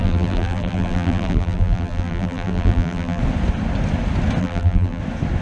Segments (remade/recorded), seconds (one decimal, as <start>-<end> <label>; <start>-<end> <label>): 0.0-3.2 remade; 3.2-4.4 recorded; 4.4-5.0 remade; 5.0-5.4 recorded

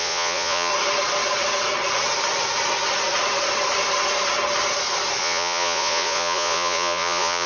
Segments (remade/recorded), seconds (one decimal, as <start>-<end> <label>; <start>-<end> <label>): 0.0-0.7 remade; 0.7-5.2 recorded; 5.2-7.5 remade